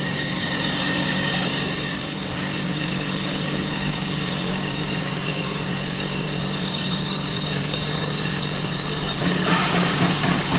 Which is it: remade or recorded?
remade